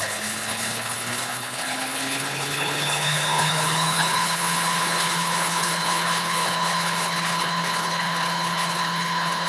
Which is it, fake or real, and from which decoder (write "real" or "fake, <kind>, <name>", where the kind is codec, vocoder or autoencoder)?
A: fake, codec, HILCodec